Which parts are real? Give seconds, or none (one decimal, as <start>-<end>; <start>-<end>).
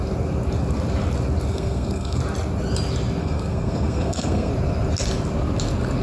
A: 0.0-1.5; 2.2-3.2; 4.5-6.0